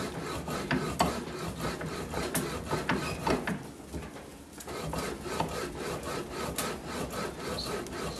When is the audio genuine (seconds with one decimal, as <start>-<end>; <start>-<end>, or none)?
0.0-8.2